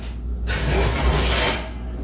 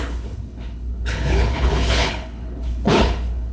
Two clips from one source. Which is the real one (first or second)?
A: first